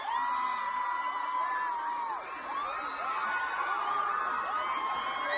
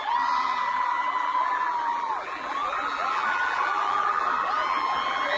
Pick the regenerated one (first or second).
second